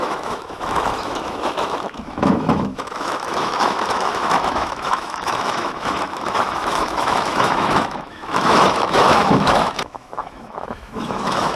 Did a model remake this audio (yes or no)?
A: yes